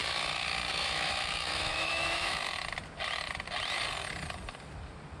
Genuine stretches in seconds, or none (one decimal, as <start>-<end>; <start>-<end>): 0.0-0.7; 2.4-5.2

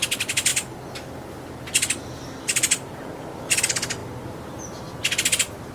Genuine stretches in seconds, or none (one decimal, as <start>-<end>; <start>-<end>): 0.0-5.7

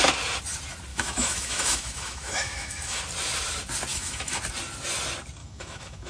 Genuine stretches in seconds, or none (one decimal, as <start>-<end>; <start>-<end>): 0.0-0.9; 3.0-3.9; 4.4-5.4

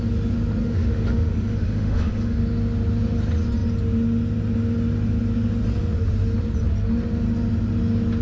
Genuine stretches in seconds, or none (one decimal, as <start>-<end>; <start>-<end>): 0.0-0.6; 2.4-8.2

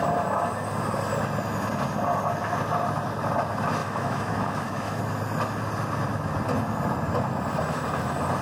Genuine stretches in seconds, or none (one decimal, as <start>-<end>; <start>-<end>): 0.0-3.8; 5.0-8.4